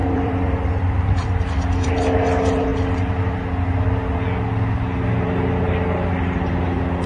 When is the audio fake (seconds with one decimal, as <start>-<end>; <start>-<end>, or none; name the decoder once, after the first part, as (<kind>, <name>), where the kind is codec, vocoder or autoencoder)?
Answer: 0.0-1.9 (vocoder, BigVGAN v2)